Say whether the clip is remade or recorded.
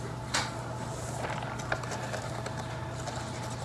recorded